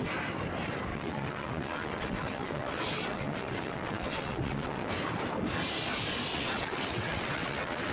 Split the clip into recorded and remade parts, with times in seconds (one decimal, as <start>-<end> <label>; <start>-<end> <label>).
0.0-0.9 recorded; 0.9-4.9 remade; 4.9-6.3 recorded; 6.3-7.9 remade